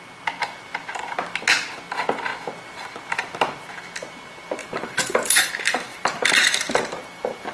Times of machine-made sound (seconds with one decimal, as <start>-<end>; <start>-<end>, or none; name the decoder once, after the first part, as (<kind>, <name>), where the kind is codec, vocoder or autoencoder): 4.6-5.5 (vocoder, BigVGAN v2); 5.9-7.5